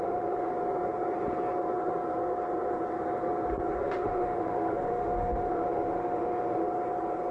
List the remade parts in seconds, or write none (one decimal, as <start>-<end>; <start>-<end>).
0.0-0.5; 3.8-6.6